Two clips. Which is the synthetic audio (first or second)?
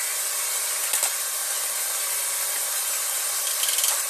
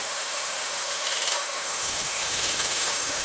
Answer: second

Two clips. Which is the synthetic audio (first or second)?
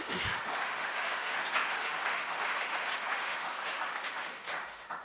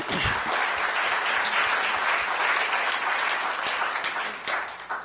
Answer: first